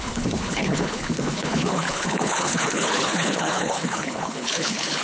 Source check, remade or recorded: remade